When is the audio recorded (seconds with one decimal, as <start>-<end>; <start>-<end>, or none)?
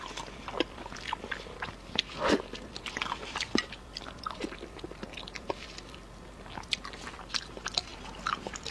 0.0-8.7